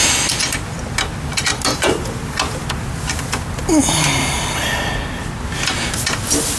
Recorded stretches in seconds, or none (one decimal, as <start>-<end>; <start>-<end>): 0.0-1.7; 2.2-6.6